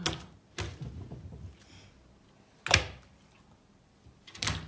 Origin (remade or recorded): recorded